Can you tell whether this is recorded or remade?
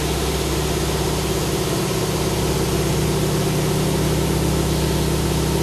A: recorded